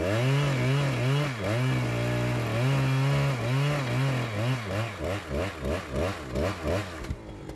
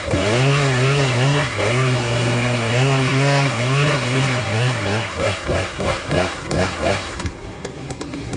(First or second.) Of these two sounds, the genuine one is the first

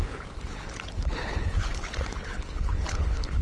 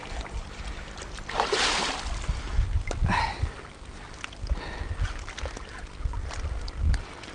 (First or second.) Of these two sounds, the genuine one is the second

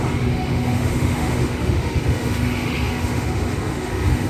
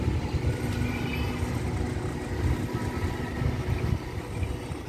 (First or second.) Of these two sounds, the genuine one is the second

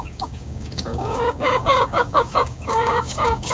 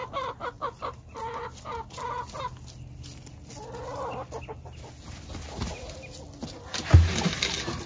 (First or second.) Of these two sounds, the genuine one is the second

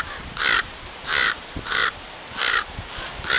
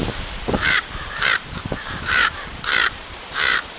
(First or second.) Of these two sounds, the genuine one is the first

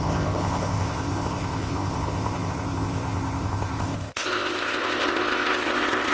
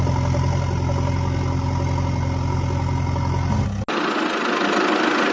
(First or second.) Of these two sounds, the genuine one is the second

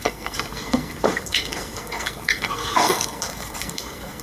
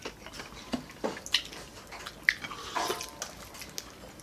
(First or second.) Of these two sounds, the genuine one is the second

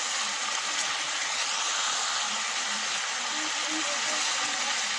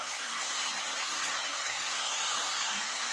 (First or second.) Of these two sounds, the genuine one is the first